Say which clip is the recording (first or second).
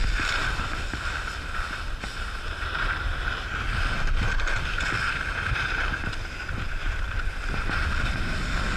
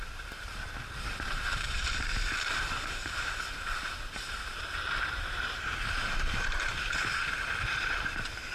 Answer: first